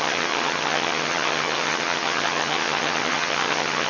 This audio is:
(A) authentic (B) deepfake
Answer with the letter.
B